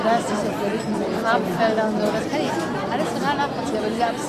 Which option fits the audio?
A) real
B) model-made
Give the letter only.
A